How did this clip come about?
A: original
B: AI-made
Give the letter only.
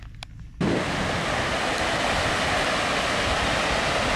A